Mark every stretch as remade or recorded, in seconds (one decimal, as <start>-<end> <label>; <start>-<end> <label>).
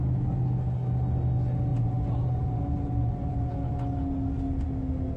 0.0-1.7 recorded; 1.7-3.5 remade; 3.5-5.2 recorded